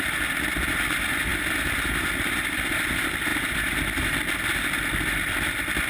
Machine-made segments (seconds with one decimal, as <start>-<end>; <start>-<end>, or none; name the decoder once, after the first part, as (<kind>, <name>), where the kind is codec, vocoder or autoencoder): 1.3-2.9 (vocoder, BigVGAN v2)